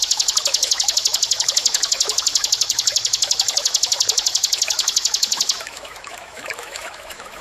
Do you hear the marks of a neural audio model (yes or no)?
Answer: yes